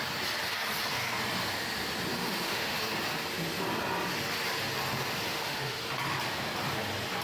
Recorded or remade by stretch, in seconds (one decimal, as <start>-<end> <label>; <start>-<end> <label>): 0.0-2.2 recorded; 2.2-2.8 remade; 2.8-5.3 recorded; 5.3-5.8 remade; 5.8-7.2 recorded